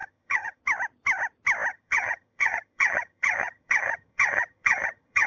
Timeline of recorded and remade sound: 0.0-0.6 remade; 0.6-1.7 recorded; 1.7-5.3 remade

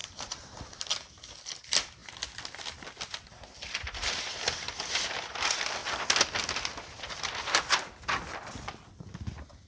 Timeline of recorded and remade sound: 0.0-9.7 recorded

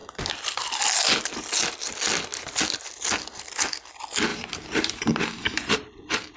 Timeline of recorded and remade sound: 0.0-4.3 recorded; 4.3-6.4 remade

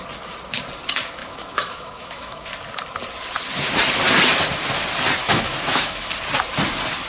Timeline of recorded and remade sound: 0.0-1.2 recorded; 1.2-2.5 remade; 2.5-5.2 recorded; 5.2-6.1 remade; 6.1-7.1 recorded

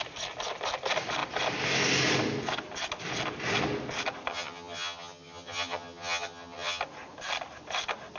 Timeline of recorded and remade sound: 0.0-4.3 recorded; 4.3-6.8 remade; 6.8-8.2 recorded

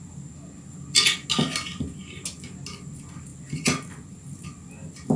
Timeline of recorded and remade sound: 0.0-5.2 recorded